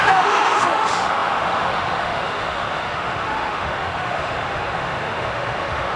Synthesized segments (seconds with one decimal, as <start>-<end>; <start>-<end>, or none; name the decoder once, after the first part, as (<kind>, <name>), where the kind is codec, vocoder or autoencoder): 0.0-6.0 (autoencoder, DAC-VAE)